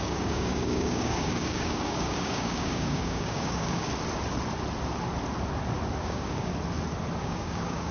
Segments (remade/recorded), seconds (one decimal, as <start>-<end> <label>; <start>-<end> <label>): 0.0-3.9 remade; 3.9-6.0 recorded; 6.0-6.5 remade; 6.5-7.2 recorded; 7.2-7.9 remade

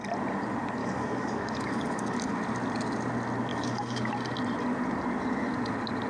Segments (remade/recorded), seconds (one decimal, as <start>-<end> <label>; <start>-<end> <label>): 0.0-0.8 recorded; 0.8-2.3 remade; 2.3-3.5 recorded; 3.5-4.1 remade; 4.1-6.1 recorded

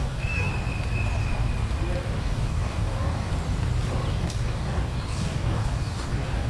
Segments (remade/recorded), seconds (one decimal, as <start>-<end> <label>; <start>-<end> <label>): 0.0-0.5 remade; 0.5-2.2 recorded; 2.2-3.3 remade; 3.3-4.1 recorded; 4.1-6.5 remade

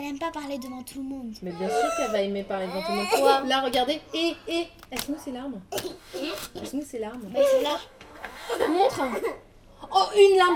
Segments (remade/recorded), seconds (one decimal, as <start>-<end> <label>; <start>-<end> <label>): 0.0-5.9 recorded; 5.9-6.7 remade; 6.7-7.7 recorded; 7.7-8.9 remade; 8.9-10.6 recorded

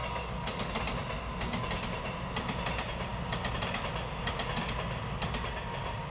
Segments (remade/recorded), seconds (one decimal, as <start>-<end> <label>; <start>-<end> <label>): 0.0-0.7 remade; 0.7-6.1 recorded

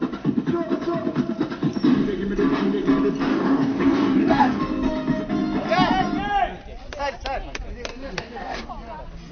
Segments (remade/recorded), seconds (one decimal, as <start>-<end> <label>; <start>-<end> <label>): 0.0-3.3 recorded; 3.3-4.6 remade; 4.6-7.9 recorded; 7.9-8.7 remade; 8.7-9.3 recorded